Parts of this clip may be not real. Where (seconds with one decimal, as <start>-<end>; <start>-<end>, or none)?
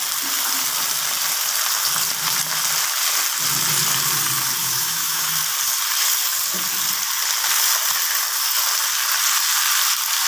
4.6-5.4